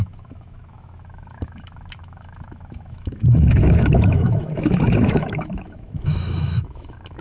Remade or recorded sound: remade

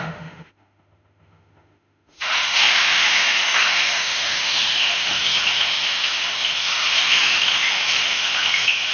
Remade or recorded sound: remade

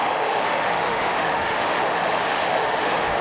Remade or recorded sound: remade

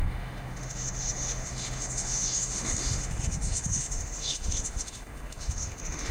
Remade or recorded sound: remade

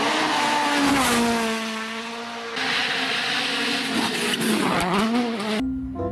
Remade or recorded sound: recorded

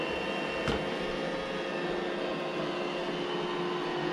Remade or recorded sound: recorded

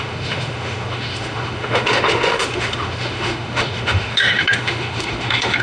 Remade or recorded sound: remade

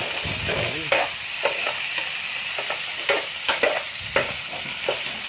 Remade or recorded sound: recorded